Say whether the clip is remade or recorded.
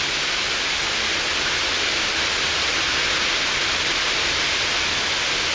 recorded